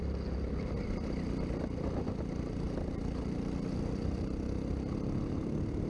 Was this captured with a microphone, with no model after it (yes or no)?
yes